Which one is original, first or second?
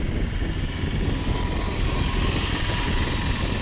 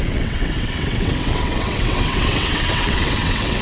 first